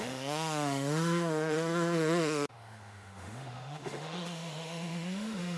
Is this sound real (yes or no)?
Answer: no